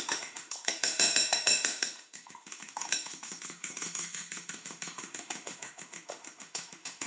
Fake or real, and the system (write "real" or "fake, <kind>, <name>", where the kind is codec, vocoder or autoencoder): fake, autoencoder, DAC-VAE